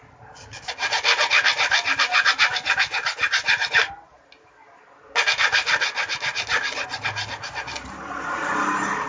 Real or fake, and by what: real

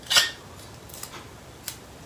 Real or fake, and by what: real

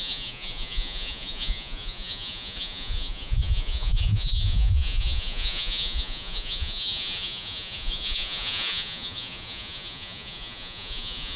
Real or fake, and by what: fake, vocoder, Vocos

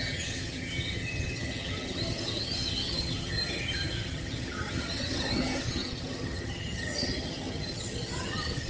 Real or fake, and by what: fake, vocoder, HiFi-GAN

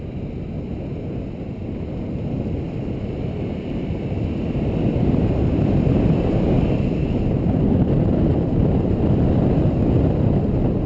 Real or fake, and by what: real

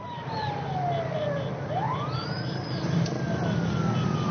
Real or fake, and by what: real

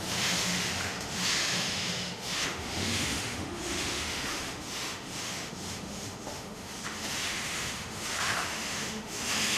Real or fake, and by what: fake, autoencoder, DAC-VAE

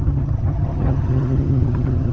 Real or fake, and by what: fake, vocoder, HiFi-GAN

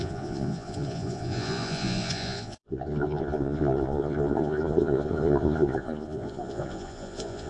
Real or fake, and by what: fake, vocoder, Vocos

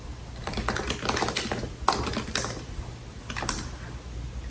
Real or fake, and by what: real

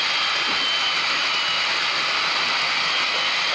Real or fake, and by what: real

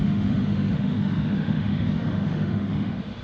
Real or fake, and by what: fake, autoencoder, DAC-VAE